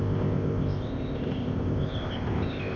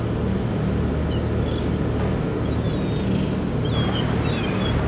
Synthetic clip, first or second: first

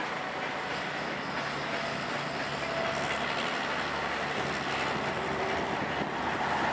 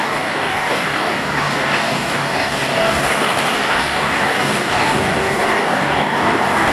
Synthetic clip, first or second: second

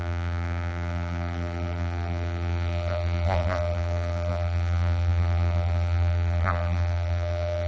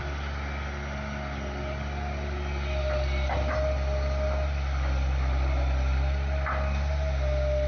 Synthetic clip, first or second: first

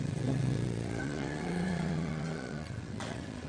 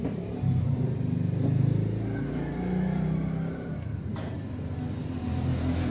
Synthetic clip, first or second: first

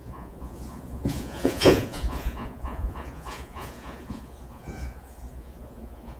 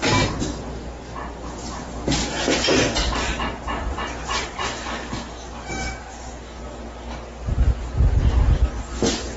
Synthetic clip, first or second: first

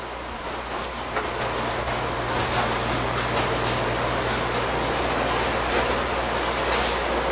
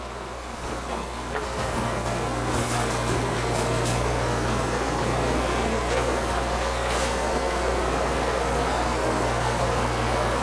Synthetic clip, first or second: second